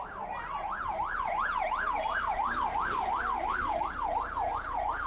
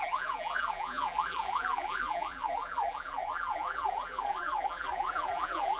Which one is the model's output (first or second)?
second